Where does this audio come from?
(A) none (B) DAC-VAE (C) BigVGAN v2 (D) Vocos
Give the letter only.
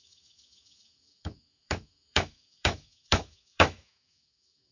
B